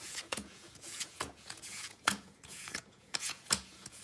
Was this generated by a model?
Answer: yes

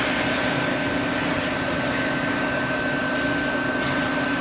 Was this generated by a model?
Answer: no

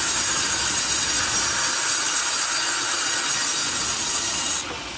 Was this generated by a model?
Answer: no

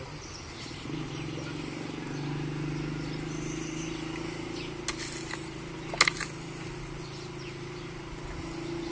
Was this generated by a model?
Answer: no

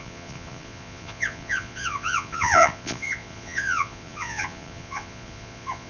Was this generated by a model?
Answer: yes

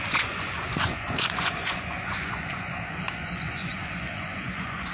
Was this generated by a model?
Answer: yes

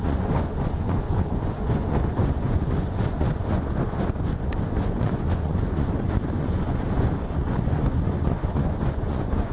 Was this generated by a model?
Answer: yes